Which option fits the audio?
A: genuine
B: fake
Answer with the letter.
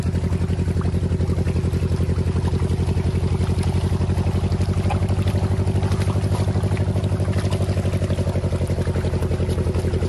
A